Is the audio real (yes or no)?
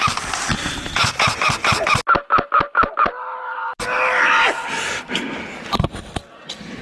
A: yes